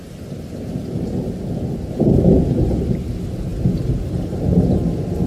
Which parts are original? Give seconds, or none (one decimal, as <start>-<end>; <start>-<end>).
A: 0.0-5.3